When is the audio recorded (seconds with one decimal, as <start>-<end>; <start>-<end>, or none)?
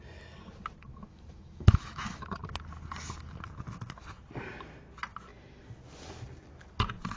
0.0-0.8; 2.4-7.2